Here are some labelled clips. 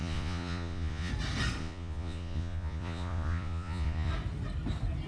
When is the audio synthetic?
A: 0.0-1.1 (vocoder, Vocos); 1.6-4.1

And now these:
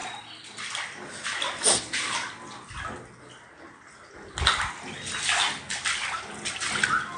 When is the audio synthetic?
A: none

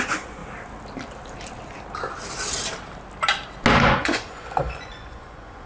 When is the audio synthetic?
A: 0.0-0.4 (vocoder, Vocos); 3.8-5.7

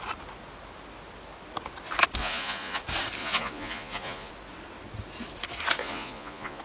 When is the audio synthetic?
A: 2.2-2.8 (vocoder, Vocos); 3.2-4.3; 5.8-6.6

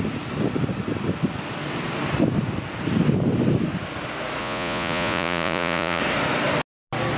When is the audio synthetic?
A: 4.4-6.0 (vocoder, Vocos)

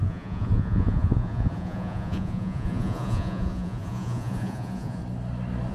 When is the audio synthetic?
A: 0.0-5.0 (vocoder, Vocos)